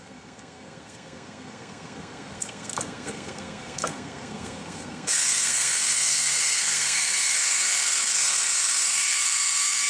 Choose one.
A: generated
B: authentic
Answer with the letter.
A